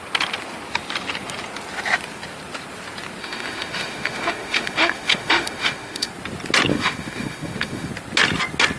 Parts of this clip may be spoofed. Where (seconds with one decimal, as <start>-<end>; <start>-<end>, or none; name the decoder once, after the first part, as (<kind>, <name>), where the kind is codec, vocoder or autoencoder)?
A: 3.2-6.1 (autoencoder, DAC-VAE); 6.7-7.9